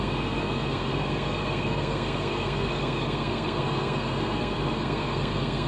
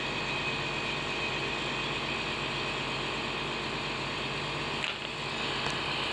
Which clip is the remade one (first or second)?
first